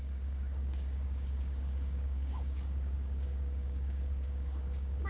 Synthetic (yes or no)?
yes